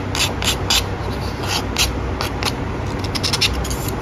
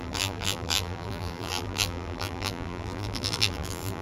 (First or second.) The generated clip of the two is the second